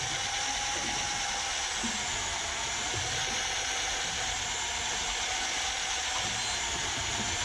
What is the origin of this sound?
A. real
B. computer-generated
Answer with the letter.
A